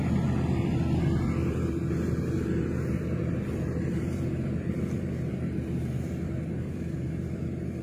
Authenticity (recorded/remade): remade